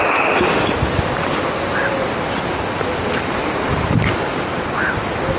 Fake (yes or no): no